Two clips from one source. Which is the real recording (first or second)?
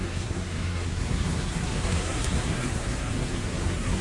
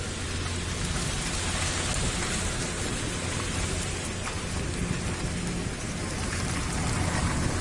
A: second